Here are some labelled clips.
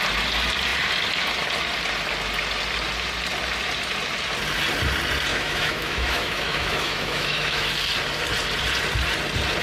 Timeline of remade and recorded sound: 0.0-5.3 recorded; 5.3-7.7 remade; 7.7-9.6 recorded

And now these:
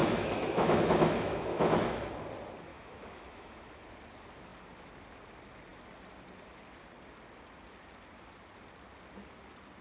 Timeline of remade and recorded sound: 0.0-2.1 remade; 2.1-2.7 recorded; 2.7-3.6 remade; 3.6-9.8 recorded

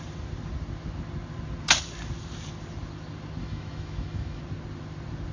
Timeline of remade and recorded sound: 0.0-3.4 recorded; 3.4-4.4 remade; 4.4-5.3 recorded

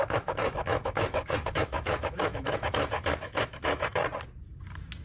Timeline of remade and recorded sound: 0.0-4.0 remade; 4.0-5.0 recorded